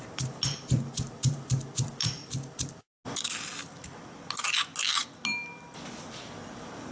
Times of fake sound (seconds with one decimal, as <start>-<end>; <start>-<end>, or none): 0.0-2.2; 6.3-6.9